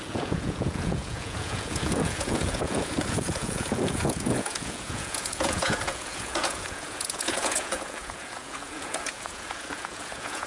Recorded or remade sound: remade